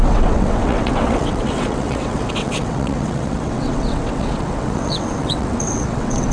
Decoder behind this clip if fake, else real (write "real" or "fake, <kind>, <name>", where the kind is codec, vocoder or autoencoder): fake, vocoder, WaveNeXt